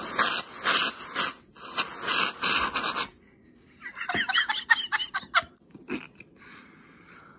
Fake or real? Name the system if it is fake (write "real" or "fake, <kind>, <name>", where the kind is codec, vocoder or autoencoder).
real